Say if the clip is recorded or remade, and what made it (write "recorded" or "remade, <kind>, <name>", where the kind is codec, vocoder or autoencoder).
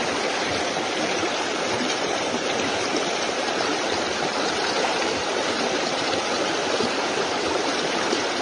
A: remade, vocoder, BigVGAN v2